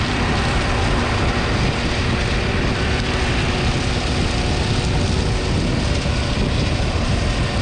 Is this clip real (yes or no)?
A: yes